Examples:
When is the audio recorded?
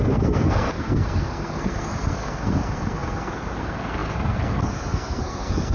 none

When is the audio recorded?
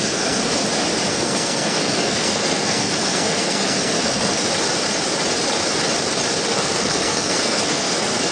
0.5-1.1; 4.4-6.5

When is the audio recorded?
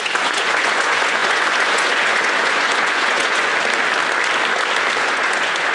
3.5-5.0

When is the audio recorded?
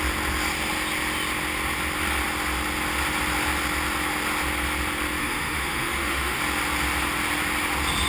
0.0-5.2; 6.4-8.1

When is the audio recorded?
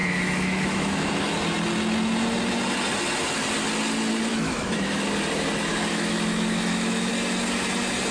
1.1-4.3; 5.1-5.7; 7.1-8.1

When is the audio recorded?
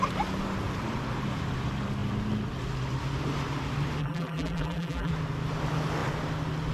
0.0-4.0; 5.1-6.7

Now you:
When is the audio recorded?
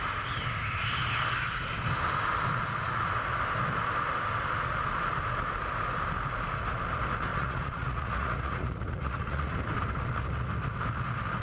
0.0-7.3; 9.6-11.4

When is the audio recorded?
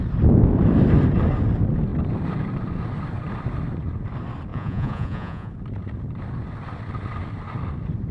0.0-4.5; 5.5-8.1